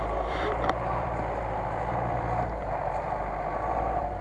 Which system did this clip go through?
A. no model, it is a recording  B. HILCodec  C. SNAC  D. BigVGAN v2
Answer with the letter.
D